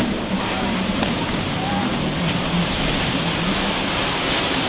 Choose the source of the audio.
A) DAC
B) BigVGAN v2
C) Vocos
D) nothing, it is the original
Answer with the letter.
B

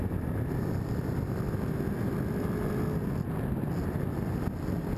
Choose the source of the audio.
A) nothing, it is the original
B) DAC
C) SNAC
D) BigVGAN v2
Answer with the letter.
A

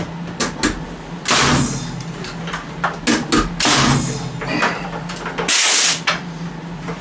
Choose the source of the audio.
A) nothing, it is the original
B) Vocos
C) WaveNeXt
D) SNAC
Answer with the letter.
A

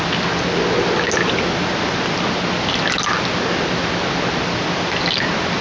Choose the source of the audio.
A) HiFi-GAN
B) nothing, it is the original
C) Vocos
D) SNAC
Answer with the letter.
B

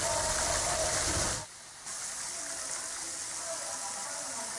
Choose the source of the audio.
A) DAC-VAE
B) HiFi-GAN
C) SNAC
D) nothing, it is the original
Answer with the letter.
D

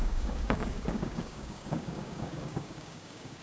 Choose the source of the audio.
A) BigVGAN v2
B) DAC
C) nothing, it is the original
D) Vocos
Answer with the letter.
B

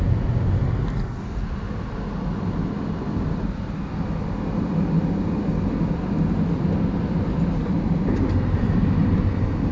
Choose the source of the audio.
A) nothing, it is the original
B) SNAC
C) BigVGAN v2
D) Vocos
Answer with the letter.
A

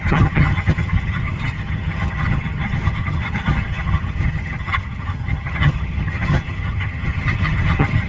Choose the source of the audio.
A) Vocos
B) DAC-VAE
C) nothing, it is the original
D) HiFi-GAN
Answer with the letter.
D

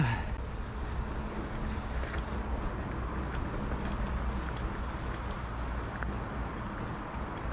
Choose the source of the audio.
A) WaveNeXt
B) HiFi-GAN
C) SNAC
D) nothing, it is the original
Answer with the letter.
D